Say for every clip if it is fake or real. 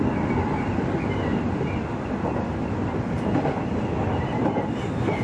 real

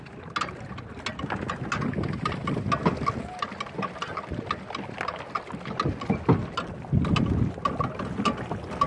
real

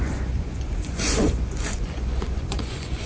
fake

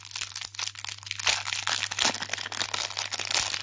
real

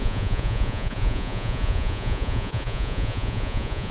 fake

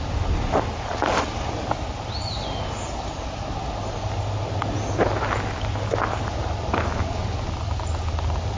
real